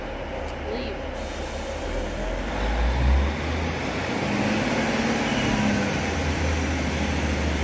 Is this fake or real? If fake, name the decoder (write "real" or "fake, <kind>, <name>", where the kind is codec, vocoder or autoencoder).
real